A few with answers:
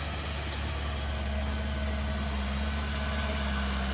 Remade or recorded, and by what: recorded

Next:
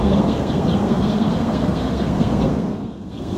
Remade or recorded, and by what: remade, codec, SNAC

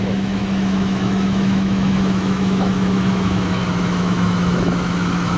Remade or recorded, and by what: remade, autoencoder, DAC-VAE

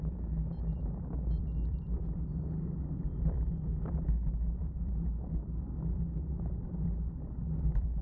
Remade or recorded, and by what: remade, vocoder, BigVGAN v2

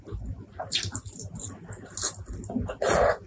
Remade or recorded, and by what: recorded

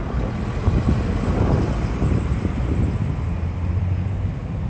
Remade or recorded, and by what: recorded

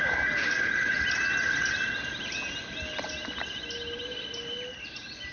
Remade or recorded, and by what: recorded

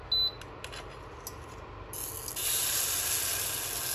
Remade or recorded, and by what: recorded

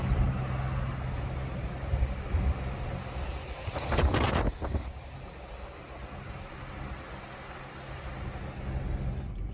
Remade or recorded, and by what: recorded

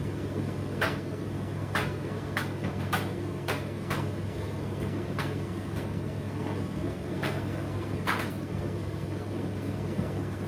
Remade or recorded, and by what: remade, codec, SNAC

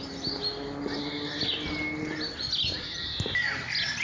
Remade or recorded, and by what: recorded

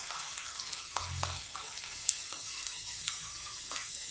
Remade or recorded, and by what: remade, codec, SNAC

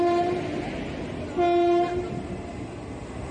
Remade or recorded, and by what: recorded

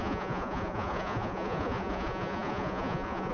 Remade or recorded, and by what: remade, vocoder, Vocos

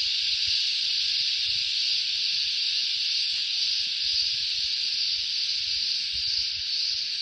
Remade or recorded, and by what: recorded